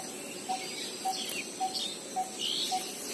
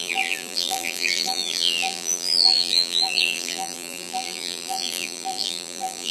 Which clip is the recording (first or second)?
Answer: first